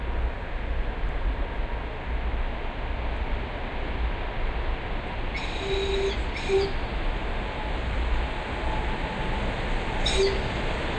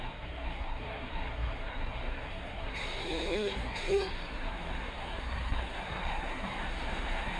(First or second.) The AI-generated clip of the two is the second